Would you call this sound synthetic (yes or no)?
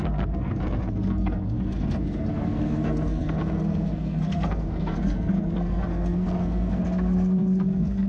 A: yes